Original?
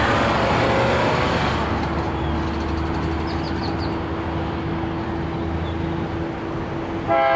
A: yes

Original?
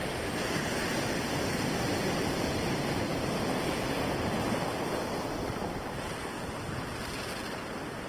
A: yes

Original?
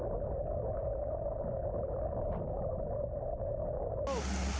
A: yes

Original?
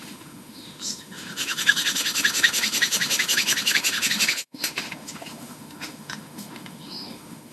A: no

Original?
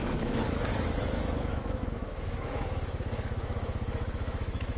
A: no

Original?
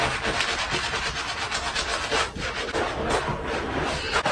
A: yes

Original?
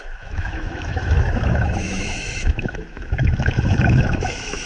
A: no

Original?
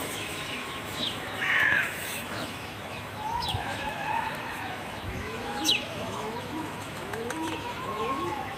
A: no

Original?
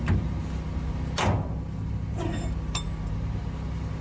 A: yes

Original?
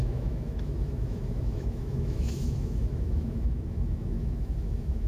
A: no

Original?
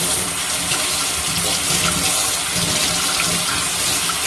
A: yes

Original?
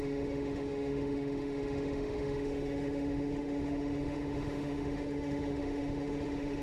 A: no